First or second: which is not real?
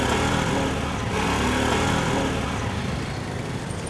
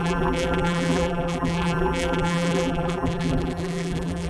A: second